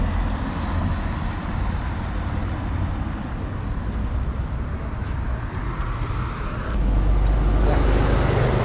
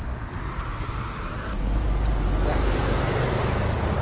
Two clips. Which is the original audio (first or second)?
first